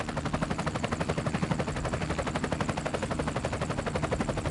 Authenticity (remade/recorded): recorded